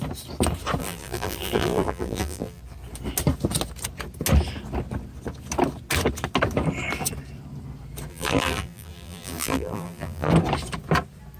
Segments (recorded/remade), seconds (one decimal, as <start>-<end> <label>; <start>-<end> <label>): 0.0-0.8 recorded; 0.8-2.6 remade; 2.6-8.1 recorded; 8.1-10.3 remade; 10.3-11.4 recorded